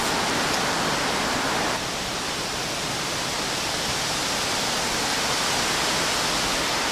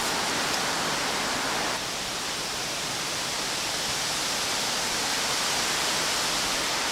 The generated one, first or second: second